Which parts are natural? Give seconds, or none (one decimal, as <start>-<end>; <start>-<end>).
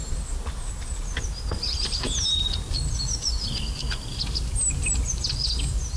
0.0-6.0